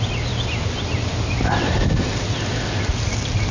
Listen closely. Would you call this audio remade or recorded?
recorded